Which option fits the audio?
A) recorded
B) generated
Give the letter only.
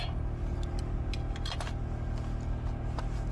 A